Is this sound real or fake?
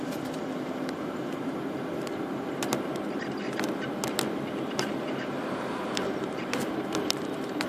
fake